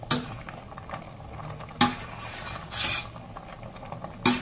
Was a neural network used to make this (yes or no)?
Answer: no